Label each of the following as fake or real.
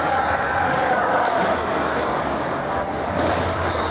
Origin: fake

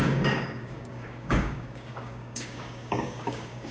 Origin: fake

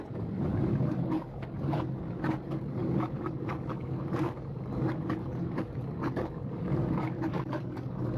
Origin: fake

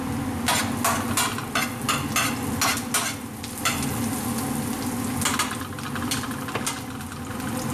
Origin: real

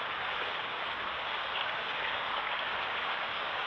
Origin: fake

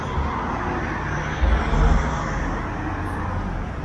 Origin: real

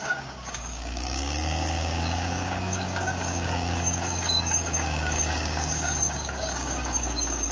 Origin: fake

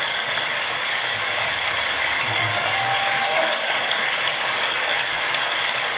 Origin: fake